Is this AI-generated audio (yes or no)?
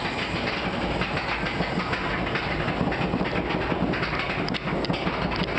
no